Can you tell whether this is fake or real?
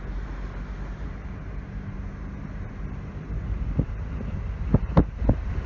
real